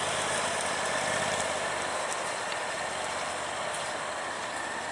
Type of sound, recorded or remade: recorded